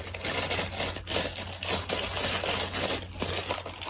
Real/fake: real